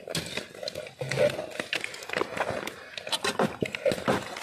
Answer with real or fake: real